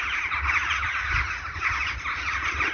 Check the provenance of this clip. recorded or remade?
recorded